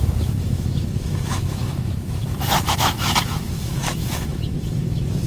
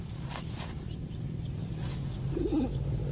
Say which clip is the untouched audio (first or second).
second